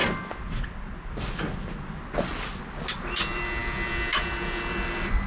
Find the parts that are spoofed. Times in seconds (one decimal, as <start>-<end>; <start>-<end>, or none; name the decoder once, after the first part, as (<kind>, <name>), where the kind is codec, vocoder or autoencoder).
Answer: none

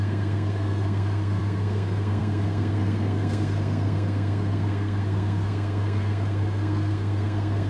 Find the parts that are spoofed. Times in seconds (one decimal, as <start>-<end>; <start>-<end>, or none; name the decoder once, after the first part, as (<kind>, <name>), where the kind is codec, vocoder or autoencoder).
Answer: 0.0-7.7 (codec, SNAC)

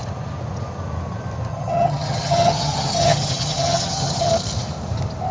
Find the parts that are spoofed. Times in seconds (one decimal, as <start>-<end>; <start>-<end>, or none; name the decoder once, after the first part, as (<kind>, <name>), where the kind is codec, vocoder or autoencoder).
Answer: 1.5-4.3 (vocoder, HiFi-GAN)

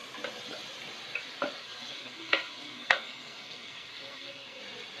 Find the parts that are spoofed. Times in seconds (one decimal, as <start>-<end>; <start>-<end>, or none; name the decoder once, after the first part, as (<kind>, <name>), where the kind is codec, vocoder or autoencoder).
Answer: 1.6-4.6 (codec, SNAC)

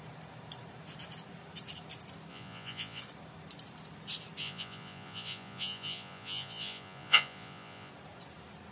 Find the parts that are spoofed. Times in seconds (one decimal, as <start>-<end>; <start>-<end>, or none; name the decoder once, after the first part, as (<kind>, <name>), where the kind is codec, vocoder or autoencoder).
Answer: 2.3-3.0 (vocoder, Vocos); 4.4-7.9

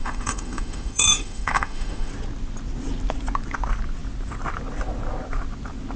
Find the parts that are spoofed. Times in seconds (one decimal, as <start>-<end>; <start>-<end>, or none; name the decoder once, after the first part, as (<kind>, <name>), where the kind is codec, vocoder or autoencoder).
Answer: 0.0-2.1 (autoencoder, DAC-VAE)

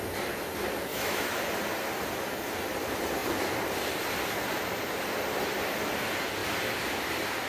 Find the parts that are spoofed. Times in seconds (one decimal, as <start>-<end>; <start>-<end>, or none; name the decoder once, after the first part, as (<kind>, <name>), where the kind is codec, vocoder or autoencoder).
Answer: 0.9-1.4 (autoencoder, DAC-VAE)